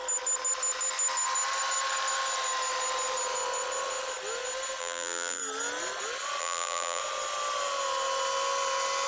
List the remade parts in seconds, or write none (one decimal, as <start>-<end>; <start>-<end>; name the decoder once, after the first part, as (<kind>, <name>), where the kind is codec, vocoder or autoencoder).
4.8-5.4 (vocoder, BigVGAN v2); 6.4-7.0